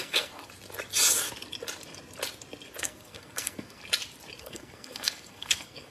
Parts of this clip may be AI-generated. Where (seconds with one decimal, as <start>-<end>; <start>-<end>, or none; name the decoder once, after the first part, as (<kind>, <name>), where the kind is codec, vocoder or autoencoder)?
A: 0.0-0.4 (codec, SNAC); 2.8-3.8; 4.4-5.9